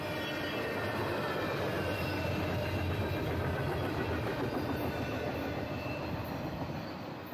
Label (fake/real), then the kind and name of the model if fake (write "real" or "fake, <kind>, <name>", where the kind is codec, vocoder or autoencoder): real